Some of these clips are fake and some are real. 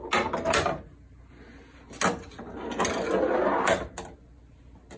real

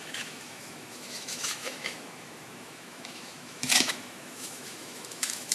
fake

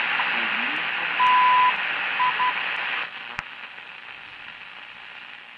real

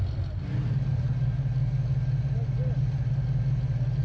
real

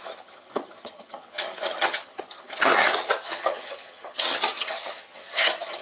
fake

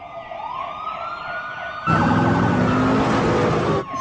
real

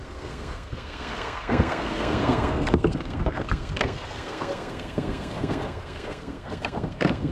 fake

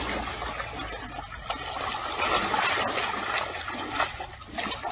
real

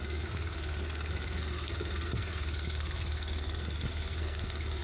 fake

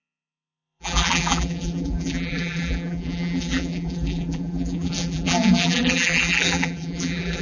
fake